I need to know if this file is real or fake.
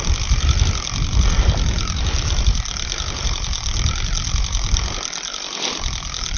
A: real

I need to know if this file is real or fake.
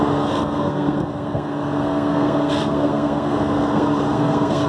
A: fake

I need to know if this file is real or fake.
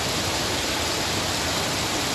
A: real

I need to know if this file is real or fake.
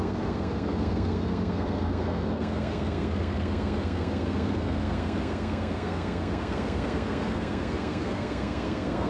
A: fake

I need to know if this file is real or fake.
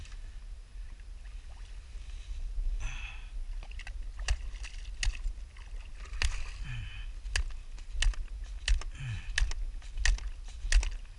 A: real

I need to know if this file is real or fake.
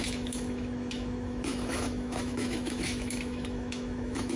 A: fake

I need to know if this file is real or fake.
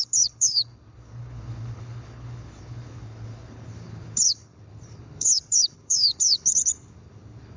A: fake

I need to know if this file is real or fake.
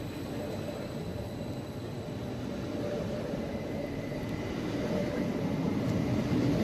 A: real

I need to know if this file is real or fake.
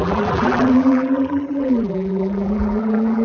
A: fake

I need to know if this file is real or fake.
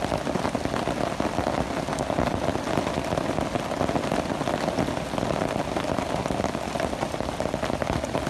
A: real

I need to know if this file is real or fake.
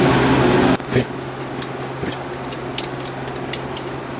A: real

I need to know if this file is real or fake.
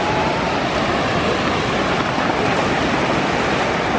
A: real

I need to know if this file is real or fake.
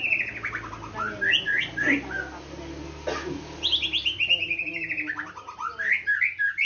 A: real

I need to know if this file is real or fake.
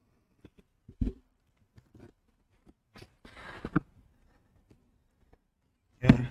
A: real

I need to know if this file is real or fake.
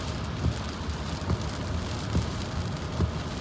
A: real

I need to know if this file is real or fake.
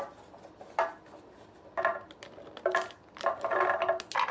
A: real